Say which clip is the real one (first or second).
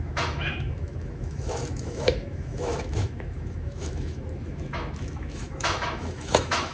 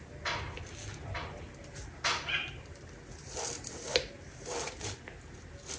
second